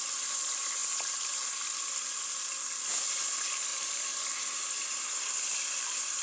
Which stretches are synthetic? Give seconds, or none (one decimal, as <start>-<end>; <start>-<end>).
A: 0.0-0.8; 3.0-6.2